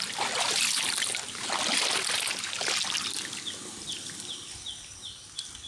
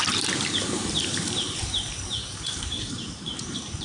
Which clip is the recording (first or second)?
first